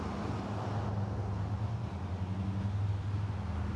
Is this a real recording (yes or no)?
yes